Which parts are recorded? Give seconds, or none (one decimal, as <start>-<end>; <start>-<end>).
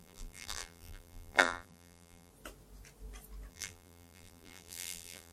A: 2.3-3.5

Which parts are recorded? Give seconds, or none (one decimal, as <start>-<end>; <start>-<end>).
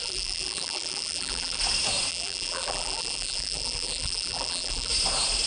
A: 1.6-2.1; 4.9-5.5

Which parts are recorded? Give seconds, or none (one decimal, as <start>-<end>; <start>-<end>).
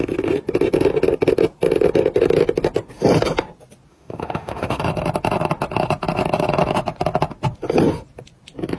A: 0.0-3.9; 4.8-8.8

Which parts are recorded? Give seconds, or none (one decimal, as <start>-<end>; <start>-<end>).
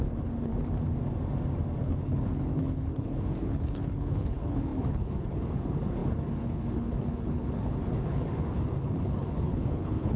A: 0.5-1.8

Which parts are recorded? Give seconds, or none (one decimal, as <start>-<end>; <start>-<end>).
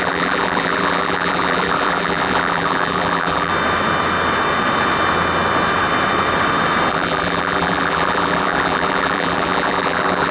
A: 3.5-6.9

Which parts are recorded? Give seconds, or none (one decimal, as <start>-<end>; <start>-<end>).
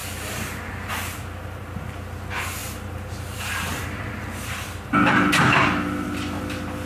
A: 0.0-2.6; 5.3-6.9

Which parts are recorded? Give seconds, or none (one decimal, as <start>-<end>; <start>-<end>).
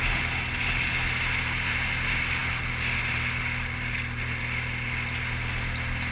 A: 0.0-6.1